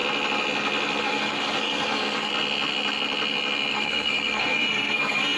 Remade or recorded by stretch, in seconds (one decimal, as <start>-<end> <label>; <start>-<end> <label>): 0.0-1.0 recorded; 1.0-2.3 remade; 2.3-3.7 recorded; 3.7-5.4 remade